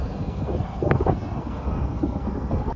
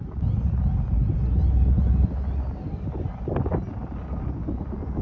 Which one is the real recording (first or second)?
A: second